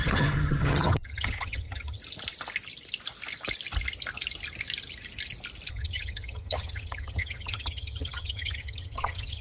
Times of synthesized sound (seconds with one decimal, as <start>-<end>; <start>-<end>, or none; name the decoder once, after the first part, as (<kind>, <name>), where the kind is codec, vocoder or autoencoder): 0.0-2.0 (vocoder, HiFi-GAN); 5.7-9.4